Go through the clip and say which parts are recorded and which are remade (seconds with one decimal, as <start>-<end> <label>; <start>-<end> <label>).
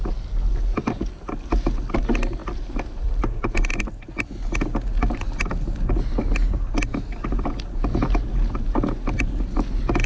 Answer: 0.0-2.4 recorded; 2.4-4.0 remade; 4.0-10.1 recorded